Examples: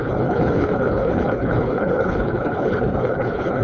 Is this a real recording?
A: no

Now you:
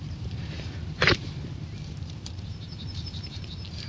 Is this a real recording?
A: no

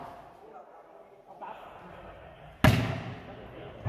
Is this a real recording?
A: yes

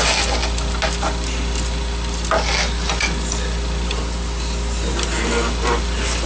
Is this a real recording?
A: yes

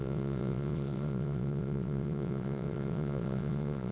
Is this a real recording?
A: no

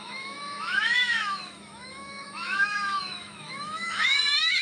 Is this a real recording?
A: no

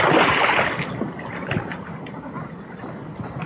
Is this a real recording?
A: yes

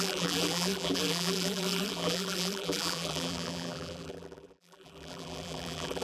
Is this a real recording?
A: no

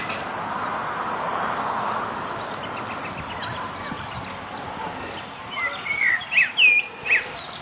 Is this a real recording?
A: yes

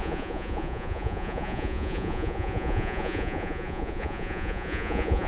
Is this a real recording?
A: no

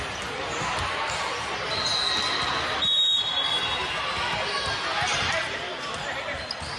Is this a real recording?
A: yes